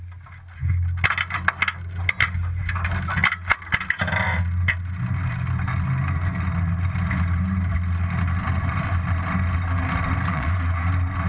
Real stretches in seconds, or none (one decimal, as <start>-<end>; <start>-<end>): 0.0-10.3; 10.9-11.3

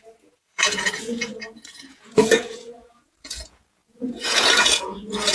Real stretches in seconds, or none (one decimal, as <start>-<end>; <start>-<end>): none

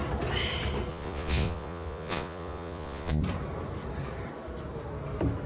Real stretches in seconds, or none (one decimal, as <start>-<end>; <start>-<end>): 0.0-0.9; 3.2-5.5

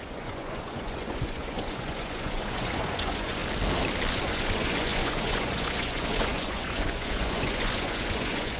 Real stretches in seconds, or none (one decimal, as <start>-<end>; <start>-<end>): 3.4-4.1

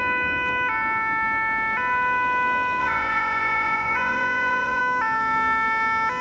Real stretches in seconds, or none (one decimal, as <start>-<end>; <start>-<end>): 0.0-2.8; 4.8-6.2